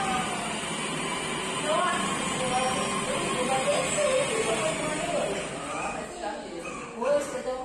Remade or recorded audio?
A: recorded